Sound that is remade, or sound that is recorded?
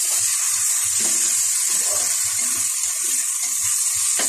recorded